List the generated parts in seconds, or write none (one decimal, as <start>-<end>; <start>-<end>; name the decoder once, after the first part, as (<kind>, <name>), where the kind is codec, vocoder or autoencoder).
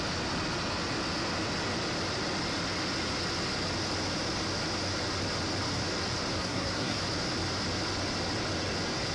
6.4-7.0 (codec, SNAC)